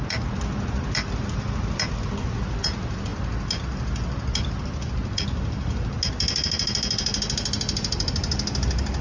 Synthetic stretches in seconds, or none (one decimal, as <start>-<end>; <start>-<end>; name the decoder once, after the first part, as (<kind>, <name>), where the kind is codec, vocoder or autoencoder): none